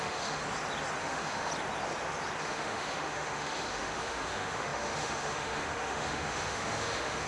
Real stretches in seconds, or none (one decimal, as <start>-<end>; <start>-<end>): 0.4-1.0; 1.5-2.4